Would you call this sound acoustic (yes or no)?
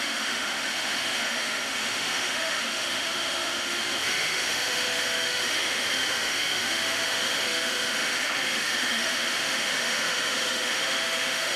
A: no